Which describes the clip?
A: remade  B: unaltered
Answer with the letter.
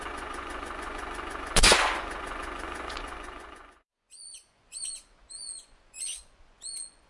A